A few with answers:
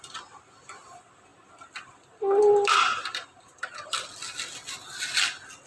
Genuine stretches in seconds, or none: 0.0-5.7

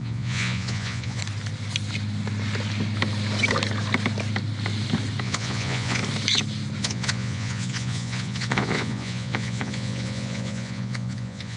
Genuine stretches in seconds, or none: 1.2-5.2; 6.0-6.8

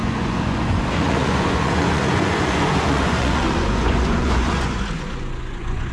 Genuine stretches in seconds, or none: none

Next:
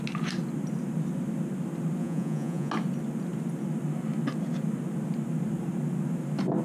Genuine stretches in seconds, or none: 0.0-2.0; 2.7-6.6

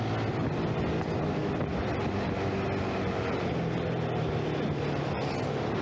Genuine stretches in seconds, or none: 0.0-5.8

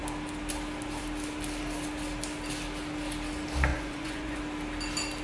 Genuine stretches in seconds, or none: 0.0-3.7; 4.4-5.2

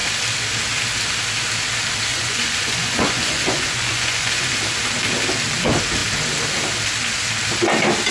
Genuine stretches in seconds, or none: 0.0-2.1; 4.5-8.1

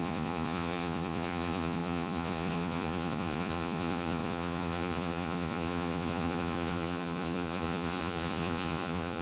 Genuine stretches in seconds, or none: none